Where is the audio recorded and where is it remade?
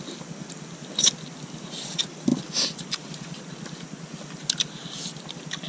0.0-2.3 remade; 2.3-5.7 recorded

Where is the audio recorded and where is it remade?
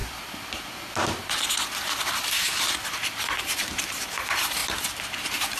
0.0-3.4 recorded; 3.4-5.6 remade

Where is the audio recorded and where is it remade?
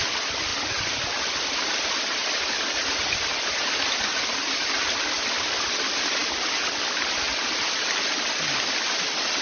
0.0-9.4 recorded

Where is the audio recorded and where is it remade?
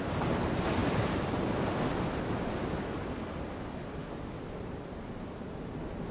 0.0-0.8 recorded; 0.8-4.5 remade; 4.5-6.1 recorded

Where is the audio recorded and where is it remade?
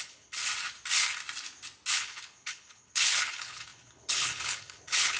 0.0-0.4 remade; 0.4-1.9 recorded; 1.9-5.2 remade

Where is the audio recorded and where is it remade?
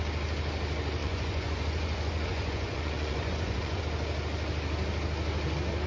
0.0-1.0 recorded; 1.0-3.8 remade; 3.8-5.9 recorded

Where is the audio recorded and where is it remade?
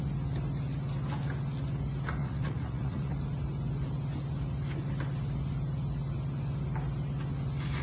0.0-2.2 recorded; 2.2-3.1 remade; 3.1-7.8 recorded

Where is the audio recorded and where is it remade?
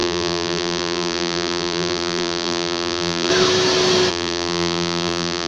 0.0-3.3 remade; 3.3-4.1 recorded; 4.1-5.5 remade